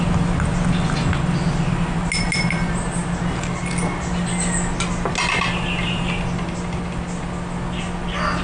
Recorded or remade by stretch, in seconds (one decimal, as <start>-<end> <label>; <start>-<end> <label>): 0.0-8.4 recorded